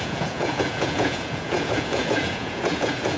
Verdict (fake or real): fake